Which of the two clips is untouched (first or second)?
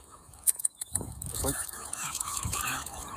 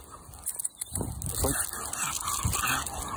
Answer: second